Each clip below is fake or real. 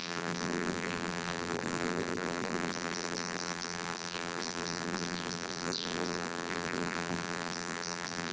fake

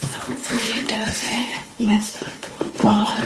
fake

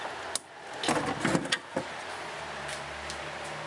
real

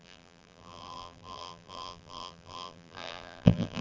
fake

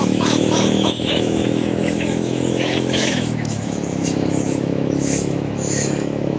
fake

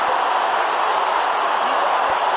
real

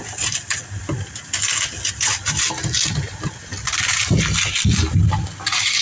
real